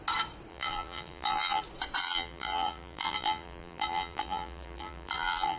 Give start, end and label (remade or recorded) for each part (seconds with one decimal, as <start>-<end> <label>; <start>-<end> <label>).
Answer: 0.0-0.5 recorded; 0.5-1.6 remade; 1.6-2.0 recorded; 2.0-5.6 remade